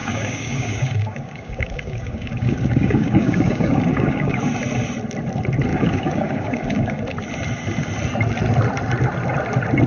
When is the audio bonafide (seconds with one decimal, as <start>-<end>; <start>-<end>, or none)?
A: 4.4-5.7; 7.0-9.9